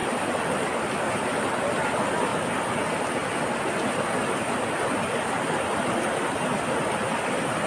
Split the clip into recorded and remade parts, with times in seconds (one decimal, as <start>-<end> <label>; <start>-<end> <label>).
0.0-7.7 recorded